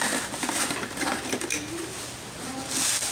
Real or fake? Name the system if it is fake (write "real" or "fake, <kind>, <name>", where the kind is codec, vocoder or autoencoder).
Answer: real